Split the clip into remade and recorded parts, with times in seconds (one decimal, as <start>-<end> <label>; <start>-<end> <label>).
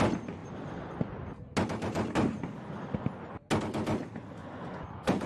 0.0-4.4 recorded; 4.4-5.3 remade